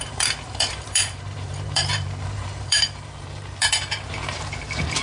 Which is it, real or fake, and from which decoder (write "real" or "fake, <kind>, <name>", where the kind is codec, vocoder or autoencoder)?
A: fake, vocoder, BigVGAN v2